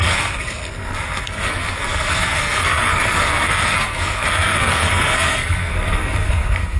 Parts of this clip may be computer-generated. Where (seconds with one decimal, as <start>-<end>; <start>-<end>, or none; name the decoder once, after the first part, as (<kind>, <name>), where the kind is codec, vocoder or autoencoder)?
0.0-6.8 (codec, SNAC)